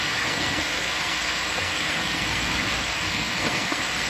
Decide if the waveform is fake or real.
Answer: fake